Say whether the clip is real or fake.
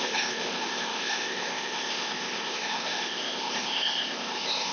fake